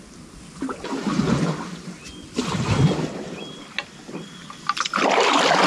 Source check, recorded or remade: remade